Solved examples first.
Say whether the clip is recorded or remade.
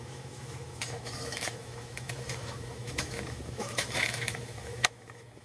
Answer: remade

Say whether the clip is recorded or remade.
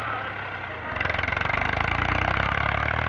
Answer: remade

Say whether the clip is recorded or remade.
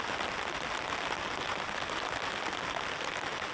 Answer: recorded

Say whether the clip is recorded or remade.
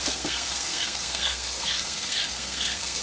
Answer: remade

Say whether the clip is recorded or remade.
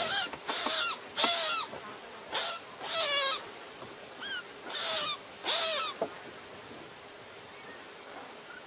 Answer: recorded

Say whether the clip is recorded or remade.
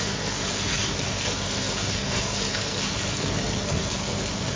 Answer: remade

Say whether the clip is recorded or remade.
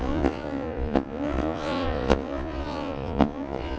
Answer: remade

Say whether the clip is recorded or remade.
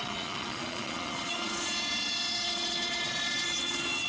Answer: remade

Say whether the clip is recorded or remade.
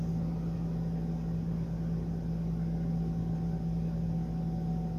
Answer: recorded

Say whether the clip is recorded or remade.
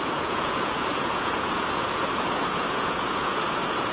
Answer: remade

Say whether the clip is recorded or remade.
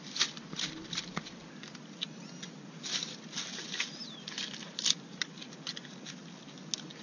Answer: recorded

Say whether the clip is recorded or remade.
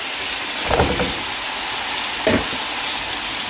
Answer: recorded